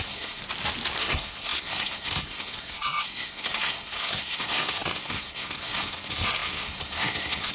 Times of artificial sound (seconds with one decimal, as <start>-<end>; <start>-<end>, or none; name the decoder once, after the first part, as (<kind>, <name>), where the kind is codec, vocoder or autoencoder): 0.0-0.4 (codec, SNAC); 1.0-7.5